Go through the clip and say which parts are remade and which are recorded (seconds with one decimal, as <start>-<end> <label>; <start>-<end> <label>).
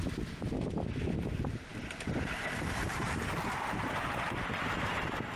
0.0-5.4 recorded